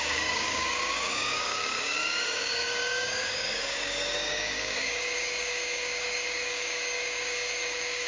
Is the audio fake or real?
fake